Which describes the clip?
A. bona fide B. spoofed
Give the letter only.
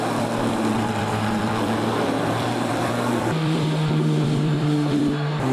B